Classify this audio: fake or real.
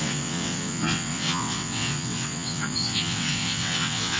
fake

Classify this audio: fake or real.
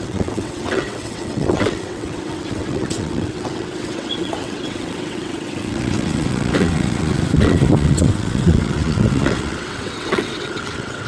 fake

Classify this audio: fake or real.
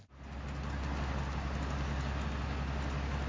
real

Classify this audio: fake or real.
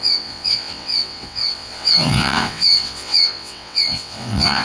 fake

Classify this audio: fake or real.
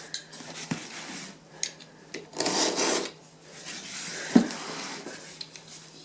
real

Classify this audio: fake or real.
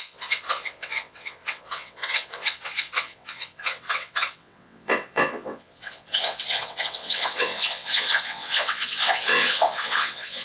fake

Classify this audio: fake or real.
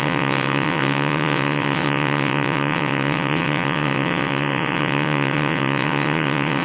fake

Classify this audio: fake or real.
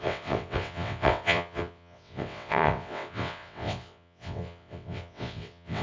fake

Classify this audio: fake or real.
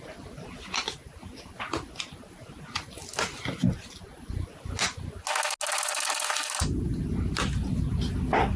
real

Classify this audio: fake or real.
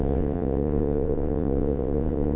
fake